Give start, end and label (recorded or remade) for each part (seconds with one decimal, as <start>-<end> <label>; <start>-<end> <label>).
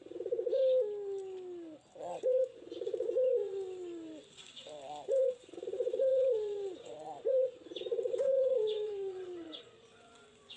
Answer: 0.0-0.6 remade; 0.6-2.0 recorded; 2.0-10.6 remade